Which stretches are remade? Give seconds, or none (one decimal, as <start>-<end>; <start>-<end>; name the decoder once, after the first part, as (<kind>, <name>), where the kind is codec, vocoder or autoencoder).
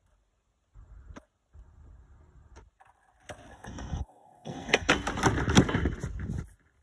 3.5-4.9 (codec, SNAC)